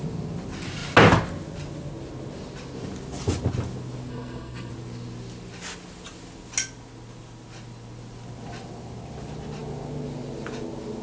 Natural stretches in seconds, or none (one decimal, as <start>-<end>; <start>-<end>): 0.0-4.1; 4.7-11.0